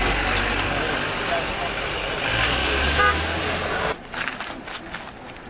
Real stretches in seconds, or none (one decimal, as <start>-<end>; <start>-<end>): 0.0-2.6; 3.4-5.5